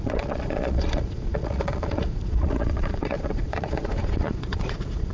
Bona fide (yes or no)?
no